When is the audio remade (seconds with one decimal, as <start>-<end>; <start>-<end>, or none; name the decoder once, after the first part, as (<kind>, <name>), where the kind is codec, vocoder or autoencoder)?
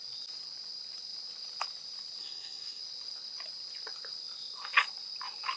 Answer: 2.2-2.8 (codec, SNAC)